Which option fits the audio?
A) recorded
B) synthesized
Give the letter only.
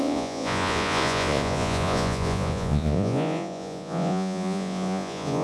B